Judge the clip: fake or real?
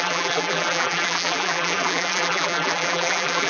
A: fake